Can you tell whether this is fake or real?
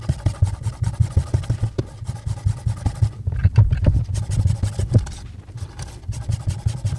real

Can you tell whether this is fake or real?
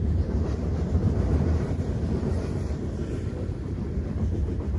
fake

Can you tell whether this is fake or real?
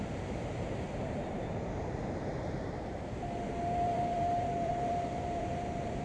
fake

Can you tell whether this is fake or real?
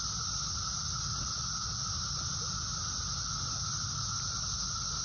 real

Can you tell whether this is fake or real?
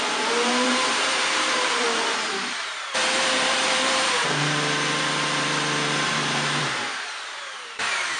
fake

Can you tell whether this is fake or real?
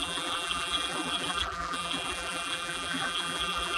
fake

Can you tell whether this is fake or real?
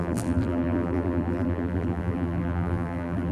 fake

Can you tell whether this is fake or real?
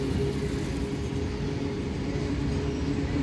real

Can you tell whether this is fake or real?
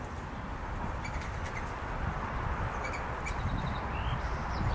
real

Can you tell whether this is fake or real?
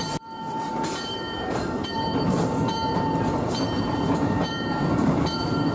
fake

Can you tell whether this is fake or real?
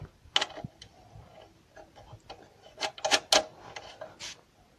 real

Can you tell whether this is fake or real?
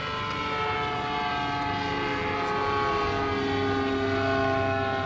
real